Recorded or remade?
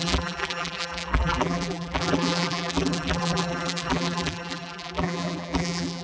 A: remade